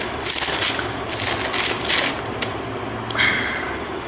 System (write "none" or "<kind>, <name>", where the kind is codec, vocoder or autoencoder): none